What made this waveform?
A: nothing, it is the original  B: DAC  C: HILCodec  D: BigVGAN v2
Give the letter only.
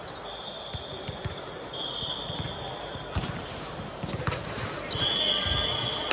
A